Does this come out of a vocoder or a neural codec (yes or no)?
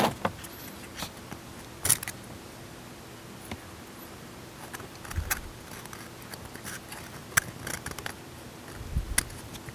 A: no